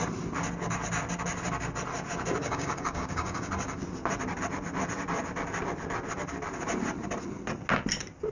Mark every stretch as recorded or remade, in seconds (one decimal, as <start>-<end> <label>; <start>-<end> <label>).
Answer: 0.0-2.4 recorded; 2.4-3.5 remade; 3.5-8.3 recorded